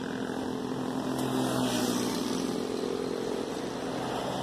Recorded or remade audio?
recorded